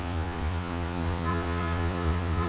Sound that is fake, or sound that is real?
fake